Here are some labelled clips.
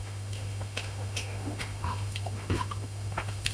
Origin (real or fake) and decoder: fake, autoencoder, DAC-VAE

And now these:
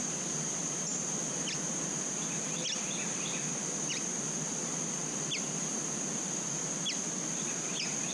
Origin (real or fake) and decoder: real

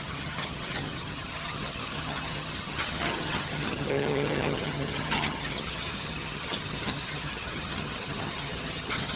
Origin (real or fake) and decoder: fake, vocoder, HiFi-GAN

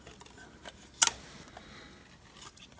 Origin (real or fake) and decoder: real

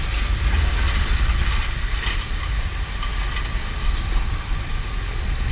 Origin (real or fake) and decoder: real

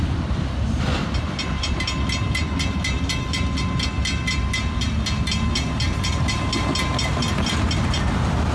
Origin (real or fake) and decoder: real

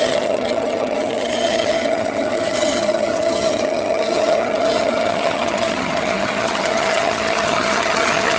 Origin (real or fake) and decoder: fake, vocoder, HiFi-GAN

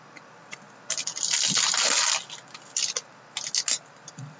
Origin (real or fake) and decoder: real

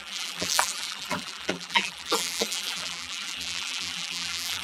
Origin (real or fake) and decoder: fake, vocoder, BigVGAN v2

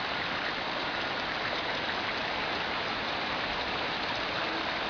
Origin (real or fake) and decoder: real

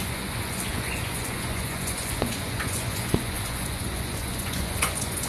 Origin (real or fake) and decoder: fake, vocoder, Vocos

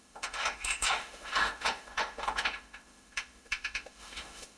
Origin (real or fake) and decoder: fake, autoencoder, DAC-VAE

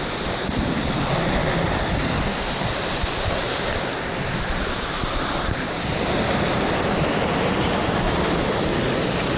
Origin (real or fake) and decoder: real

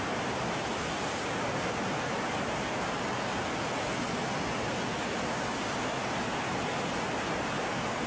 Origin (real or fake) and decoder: real